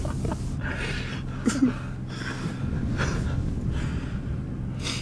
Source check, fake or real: real